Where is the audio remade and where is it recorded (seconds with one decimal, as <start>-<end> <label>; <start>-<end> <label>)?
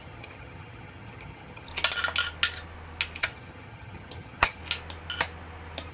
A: 0.0-1.7 remade; 1.7-3.2 recorded; 3.2-4.6 remade; 4.6-5.9 recorded